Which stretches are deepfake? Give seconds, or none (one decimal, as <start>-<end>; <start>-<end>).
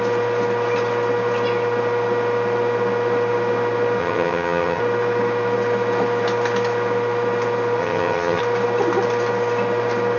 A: 4.0-4.8; 7.8-8.4